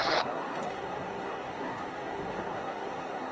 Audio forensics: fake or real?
fake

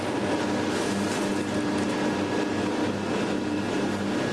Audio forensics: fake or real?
real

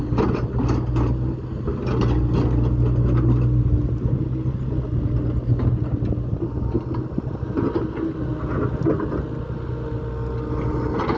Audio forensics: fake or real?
real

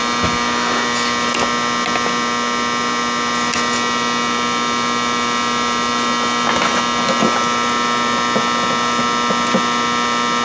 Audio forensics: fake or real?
real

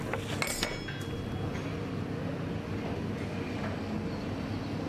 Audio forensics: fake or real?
real